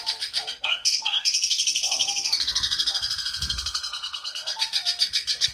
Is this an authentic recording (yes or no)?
no